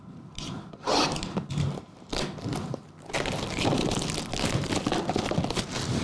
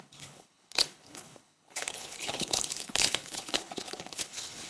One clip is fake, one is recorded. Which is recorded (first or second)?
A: first